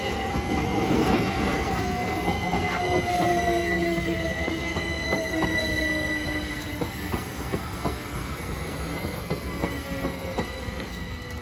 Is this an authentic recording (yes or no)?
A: no